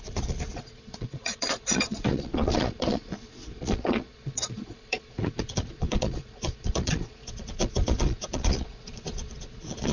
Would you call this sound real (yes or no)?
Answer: no